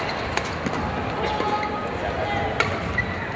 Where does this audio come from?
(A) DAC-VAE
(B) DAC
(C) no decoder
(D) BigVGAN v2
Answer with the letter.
C